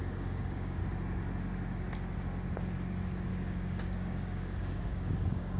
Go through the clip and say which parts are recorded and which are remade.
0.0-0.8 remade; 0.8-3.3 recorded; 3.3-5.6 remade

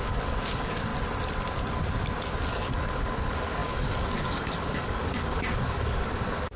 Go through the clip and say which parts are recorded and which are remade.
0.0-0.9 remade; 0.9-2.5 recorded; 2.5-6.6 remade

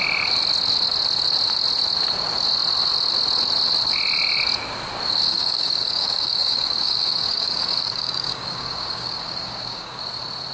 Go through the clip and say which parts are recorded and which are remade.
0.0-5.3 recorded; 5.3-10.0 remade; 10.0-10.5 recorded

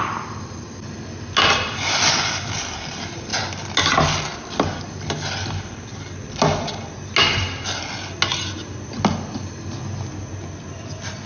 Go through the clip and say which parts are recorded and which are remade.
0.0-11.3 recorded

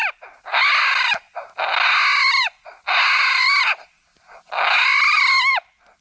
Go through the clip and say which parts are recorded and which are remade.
0.0-6.0 recorded

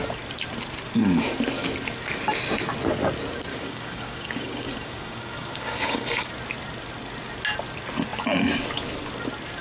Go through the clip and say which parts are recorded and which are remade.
0.0-3.5 recorded; 3.5-6.3 remade; 6.3-9.6 recorded